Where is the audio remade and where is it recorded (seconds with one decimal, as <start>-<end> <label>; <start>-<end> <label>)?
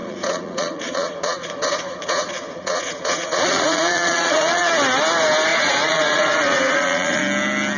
0.0-4.7 remade; 4.7-5.5 recorded; 5.5-7.2 remade; 7.2-7.8 recorded